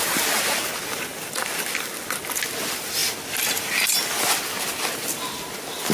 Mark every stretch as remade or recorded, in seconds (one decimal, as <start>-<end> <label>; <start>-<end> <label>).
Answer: 0.0-1.1 recorded; 1.1-2.2 remade; 2.2-5.9 recorded